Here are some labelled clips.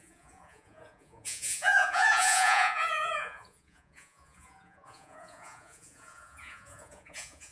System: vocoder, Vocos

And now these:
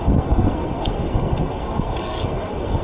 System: codec, SNAC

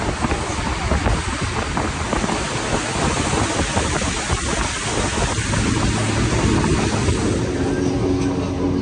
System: none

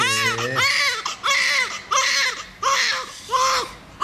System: none